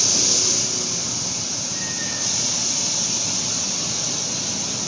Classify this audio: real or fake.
real